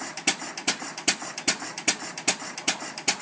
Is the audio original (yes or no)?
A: yes